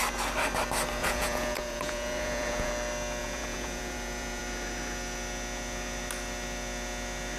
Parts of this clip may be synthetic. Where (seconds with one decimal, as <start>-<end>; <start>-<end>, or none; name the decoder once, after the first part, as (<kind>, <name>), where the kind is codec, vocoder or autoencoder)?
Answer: 1.0-2.7 (vocoder, Vocos); 3.2-4.4